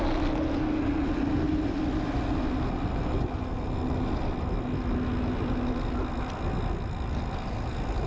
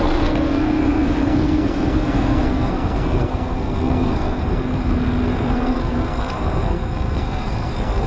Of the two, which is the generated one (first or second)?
second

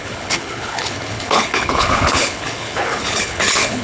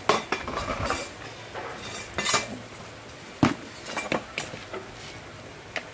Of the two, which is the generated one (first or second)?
first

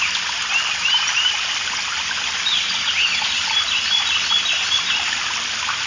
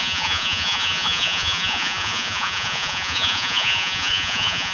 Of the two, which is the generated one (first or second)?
second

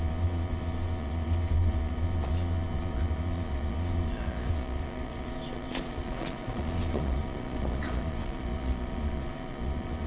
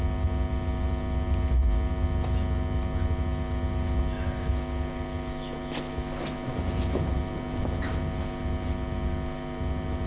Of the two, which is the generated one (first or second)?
first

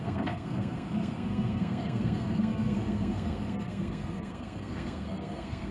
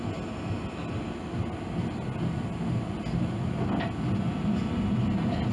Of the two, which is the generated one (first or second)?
first